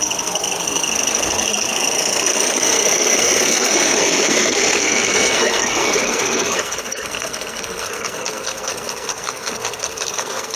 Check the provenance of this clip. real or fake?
fake